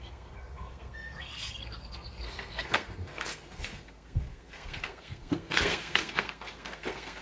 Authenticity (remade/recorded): remade